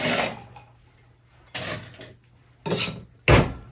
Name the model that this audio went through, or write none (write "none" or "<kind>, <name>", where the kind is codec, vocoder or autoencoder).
none